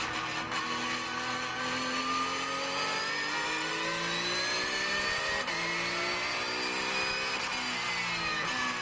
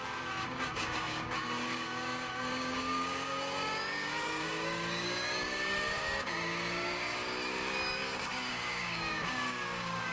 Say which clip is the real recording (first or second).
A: first